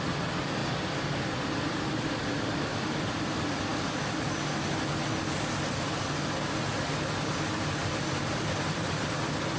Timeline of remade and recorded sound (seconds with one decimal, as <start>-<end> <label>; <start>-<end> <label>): 0.0-7.8 recorded; 7.8-9.0 remade; 9.0-9.6 recorded